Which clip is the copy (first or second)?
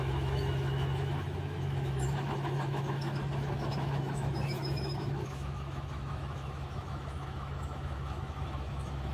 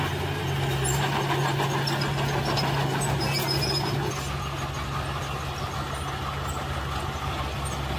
first